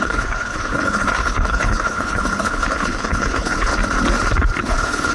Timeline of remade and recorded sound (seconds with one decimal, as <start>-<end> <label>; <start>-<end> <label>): 0.0-3.7 remade; 3.7-4.6 recorded; 4.6-5.1 remade